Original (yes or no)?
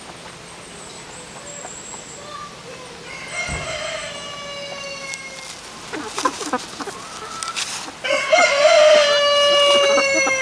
yes